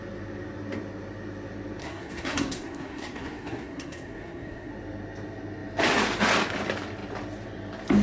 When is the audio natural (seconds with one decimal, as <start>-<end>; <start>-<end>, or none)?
0.0-1.8; 4.7-8.0